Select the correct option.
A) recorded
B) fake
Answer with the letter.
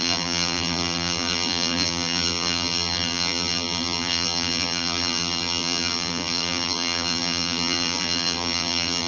B